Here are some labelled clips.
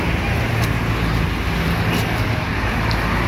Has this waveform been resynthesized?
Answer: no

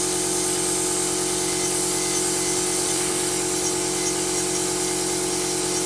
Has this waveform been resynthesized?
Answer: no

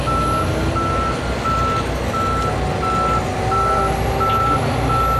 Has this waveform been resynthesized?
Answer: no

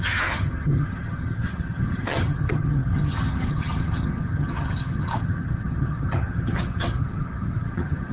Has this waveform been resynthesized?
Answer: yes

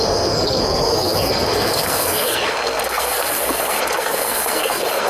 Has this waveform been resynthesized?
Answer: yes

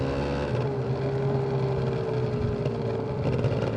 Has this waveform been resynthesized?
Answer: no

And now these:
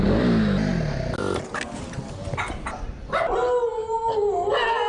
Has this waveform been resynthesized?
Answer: no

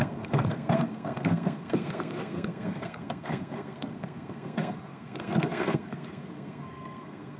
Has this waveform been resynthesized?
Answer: yes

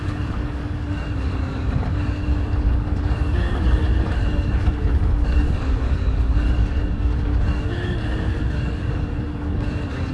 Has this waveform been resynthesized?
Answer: yes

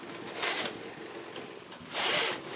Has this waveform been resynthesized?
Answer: no